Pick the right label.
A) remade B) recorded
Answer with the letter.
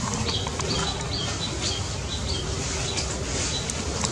B